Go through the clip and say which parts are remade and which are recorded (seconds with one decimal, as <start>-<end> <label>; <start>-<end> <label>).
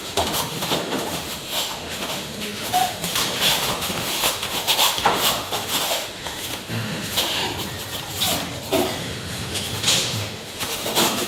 0.0-7.4 remade; 7.4-9.0 recorded; 9.0-11.3 remade